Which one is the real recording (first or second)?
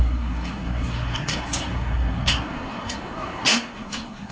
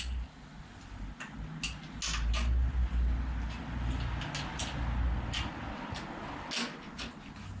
second